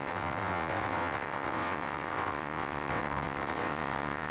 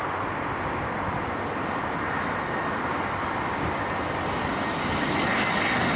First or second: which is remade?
first